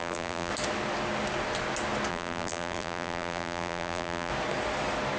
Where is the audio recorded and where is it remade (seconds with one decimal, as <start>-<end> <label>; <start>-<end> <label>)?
0.0-0.5 remade; 0.5-2.1 recorded; 2.1-4.3 remade; 4.3-5.2 recorded